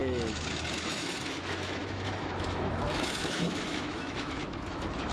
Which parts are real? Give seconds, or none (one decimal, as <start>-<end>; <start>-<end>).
none